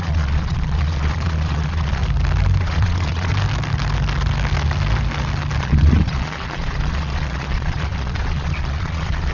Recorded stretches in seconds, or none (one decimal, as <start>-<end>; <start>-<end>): 2.0-2.6; 3.3-5.6